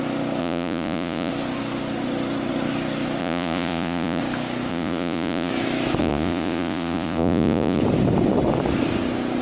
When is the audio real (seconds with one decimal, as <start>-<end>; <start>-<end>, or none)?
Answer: 0.0-0.4; 1.3-3.2; 4.2-4.7; 5.5-6.0; 7.8-9.4